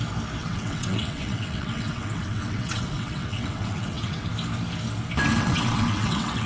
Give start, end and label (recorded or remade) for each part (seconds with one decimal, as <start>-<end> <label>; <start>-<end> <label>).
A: 0.0-0.4 recorded; 0.4-4.3 remade; 4.3-5.3 recorded; 5.3-6.5 remade